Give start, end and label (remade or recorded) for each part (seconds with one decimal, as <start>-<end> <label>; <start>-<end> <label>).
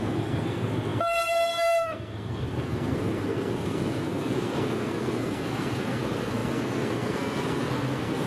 0.0-8.3 remade